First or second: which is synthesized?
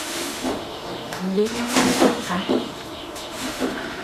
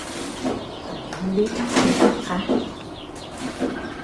first